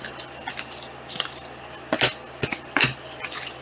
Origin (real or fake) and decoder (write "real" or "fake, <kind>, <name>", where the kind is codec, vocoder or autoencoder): real